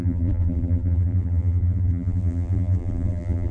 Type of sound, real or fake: fake